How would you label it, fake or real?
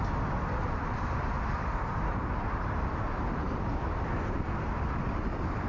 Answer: real